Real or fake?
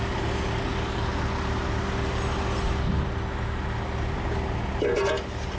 real